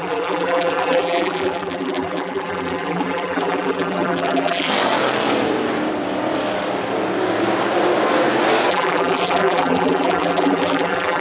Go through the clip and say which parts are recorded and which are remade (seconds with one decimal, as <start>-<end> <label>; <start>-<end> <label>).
0.0-4.7 remade; 4.7-8.7 recorded; 8.7-11.2 remade